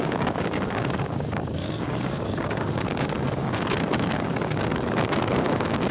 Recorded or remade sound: remade